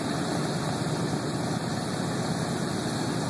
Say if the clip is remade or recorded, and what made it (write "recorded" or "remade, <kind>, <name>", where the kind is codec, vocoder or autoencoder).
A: recorded